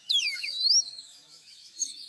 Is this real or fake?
fake